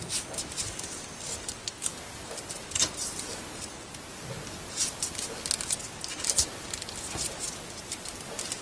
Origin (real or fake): real